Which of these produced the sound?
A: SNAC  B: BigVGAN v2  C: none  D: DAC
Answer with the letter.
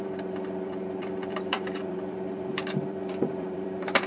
B